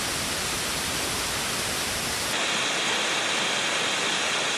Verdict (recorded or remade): recorded